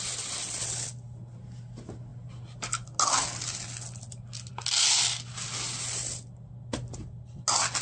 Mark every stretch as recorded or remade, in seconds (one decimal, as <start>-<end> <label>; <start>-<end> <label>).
0.0-7.8 recorded